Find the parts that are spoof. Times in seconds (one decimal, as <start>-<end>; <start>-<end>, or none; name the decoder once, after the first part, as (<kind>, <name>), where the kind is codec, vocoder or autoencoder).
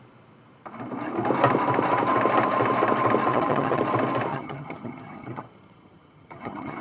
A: 3.3-3.8 (vocoder, HiFi-GAN); 4.3-6.8